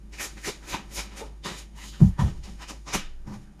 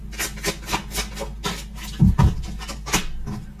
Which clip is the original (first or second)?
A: second